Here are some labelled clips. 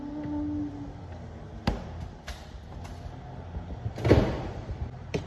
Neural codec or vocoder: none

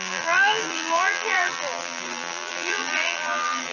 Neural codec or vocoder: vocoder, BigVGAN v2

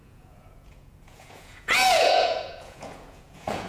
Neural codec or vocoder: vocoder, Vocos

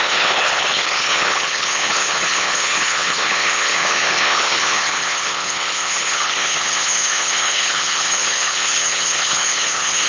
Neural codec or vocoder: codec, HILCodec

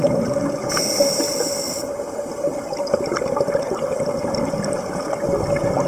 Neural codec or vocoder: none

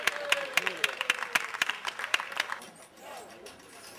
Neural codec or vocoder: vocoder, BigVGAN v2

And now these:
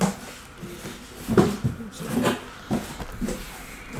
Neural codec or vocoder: none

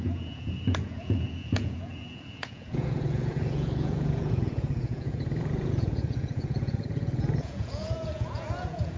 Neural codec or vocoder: vocoder, Vocos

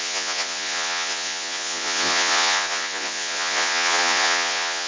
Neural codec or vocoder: vocoder, Vocos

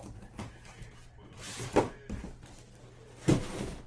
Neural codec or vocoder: none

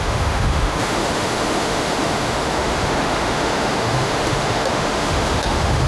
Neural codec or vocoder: autoencoder, DAC-VAE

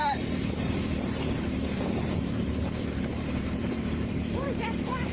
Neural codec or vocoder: vocoder, BigVGAN v2